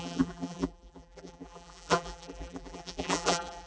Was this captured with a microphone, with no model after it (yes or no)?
no